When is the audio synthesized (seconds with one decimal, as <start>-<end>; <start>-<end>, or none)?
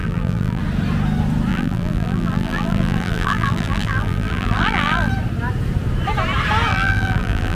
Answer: 0.0-0.6; 1.5-5.1; 6.7-7.6